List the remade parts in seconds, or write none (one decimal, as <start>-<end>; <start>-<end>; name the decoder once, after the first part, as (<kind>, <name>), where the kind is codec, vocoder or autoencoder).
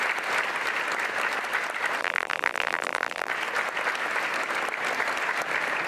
2.0-3.3 (vocoder, BigVGAN v2)